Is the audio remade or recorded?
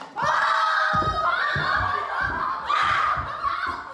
recorded